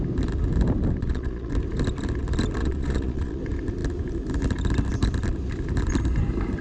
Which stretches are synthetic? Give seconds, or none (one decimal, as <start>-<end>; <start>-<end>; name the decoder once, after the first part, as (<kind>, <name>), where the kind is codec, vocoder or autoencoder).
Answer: 1.0-1.5 (vocoder, Vocos); 2.6-3.4